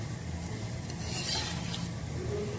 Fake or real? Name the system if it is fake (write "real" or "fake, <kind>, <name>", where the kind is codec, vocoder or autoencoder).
real